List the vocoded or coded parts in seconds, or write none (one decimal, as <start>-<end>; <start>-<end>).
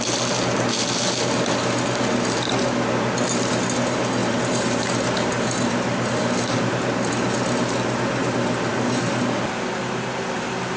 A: 4.2-6.7; 8.7-9.2